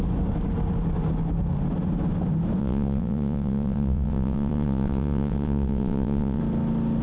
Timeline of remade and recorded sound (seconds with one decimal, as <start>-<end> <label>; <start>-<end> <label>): 0.0-2.6 recorded; 2.6-6.4 remade; 6.4-7.0 recorded